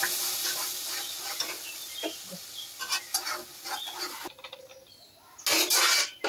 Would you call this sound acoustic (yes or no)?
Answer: yes